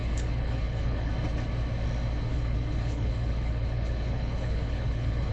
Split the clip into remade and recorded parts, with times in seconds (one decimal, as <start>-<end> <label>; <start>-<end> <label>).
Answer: 0.0-1.1 remade; 1.1-2.3 recorded; 2.3-5.3 remade